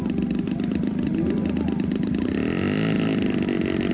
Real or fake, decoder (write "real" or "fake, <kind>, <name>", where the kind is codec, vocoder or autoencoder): real